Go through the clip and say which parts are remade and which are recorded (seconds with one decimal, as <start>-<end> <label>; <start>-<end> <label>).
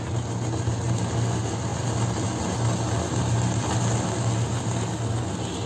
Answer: 0.0-5.7 recorded